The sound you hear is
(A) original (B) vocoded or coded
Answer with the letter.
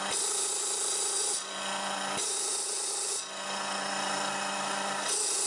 A